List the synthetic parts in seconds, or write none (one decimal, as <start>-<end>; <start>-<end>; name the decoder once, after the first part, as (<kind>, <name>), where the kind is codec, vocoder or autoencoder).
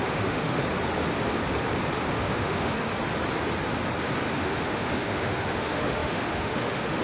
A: 0.0-0.6 (autoencoder, DAC-VAE); 2.1-2.9; 4.3-7.0